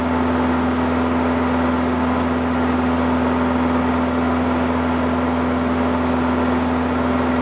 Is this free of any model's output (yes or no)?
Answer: yes